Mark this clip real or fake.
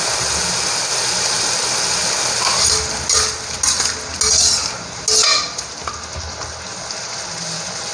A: real